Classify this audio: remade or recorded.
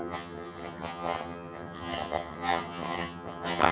remade